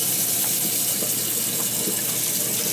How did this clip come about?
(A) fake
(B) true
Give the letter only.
B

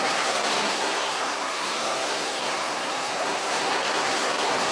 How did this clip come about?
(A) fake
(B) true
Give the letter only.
A